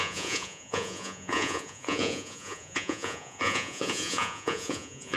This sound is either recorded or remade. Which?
remade